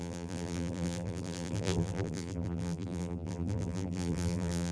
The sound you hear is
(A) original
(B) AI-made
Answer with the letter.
B